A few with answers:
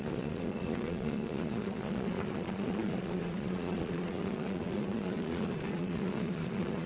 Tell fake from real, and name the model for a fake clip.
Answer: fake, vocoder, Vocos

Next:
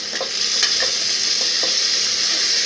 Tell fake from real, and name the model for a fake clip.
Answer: real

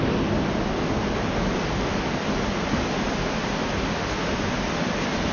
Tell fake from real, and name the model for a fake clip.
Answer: real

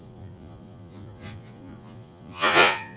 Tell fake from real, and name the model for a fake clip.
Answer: fake, vocoder, Vocos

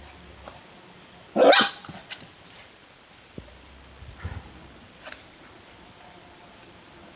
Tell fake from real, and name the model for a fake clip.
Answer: real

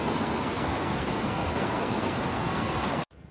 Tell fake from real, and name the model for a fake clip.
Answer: fake, codec, SNAC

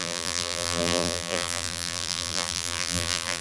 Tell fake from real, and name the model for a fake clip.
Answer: fake, vocoder, BigVGAN v2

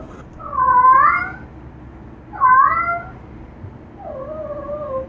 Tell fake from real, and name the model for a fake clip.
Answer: real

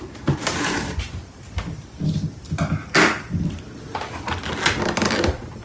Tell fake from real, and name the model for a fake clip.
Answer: real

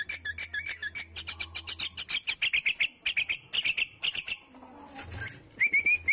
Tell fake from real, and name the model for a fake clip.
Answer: real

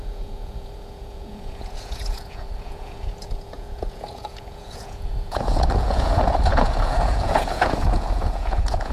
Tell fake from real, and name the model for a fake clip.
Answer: fake, vocoder, Vocos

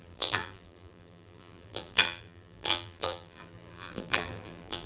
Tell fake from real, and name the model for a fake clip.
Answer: fake, vocoder, BigVGAN v2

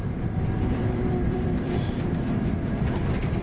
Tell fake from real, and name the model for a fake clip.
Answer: fake, vocoder, BigVGAN v2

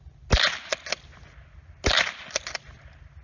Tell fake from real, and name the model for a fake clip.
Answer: real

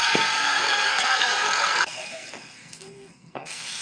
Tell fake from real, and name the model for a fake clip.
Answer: fake, codec, SNAC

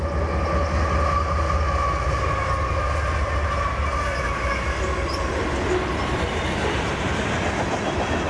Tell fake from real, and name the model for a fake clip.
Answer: real